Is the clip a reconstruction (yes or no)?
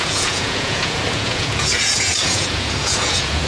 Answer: yes